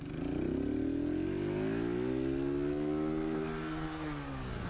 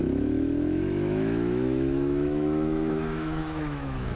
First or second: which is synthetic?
second